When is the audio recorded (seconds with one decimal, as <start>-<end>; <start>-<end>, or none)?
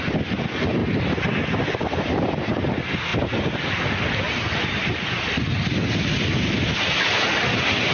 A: 0.0-7.9